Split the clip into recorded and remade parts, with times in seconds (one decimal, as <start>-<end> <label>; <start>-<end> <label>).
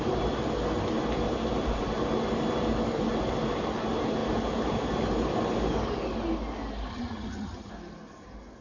0.0-6.9 recorded; 6.9-7.7 remade; 7.7-8.6 recorded